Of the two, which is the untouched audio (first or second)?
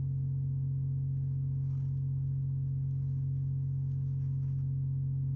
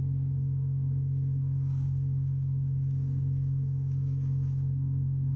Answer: first